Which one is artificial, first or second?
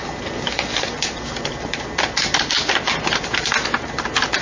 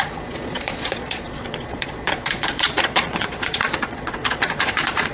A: second